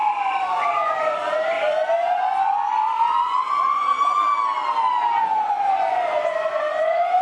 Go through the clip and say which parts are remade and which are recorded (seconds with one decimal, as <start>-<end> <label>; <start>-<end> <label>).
0.0-4.0 remade; 4.0-5.2 recorded; 5.2-7.2 remade